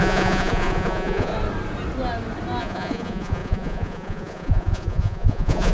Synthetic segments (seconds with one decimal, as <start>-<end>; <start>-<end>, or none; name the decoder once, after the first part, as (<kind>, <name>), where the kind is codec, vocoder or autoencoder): 0.0-1.3 (vocoder, Vocos); 2.6-5.7